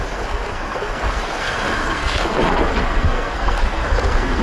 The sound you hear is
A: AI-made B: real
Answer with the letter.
A